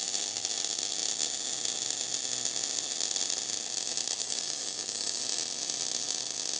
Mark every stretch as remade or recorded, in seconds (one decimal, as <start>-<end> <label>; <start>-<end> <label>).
0.0-4.2 recorded; 4.2-5.2 remade; 5.2-6.6 recorded